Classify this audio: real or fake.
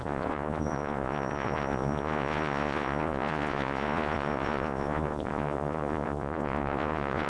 fake